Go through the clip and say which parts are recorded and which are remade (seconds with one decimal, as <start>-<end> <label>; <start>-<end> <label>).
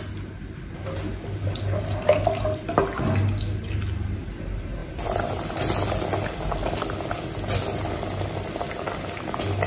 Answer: 0.0-4.8 recorded; 4.8-5.5 remade; 5.5-9.7 recorded